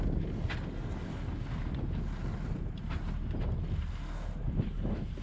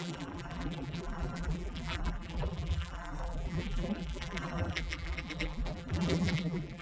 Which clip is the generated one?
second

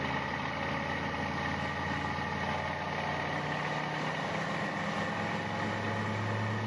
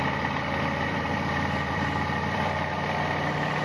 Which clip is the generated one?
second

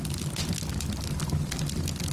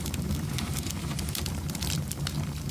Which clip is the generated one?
second